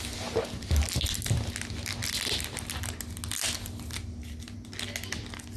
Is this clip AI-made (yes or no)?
no